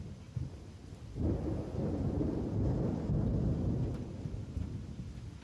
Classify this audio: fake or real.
real